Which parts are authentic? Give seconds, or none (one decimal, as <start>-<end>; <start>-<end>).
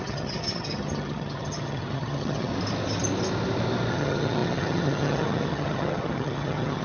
2.5-3.9